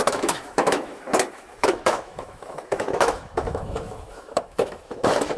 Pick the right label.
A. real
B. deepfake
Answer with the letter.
B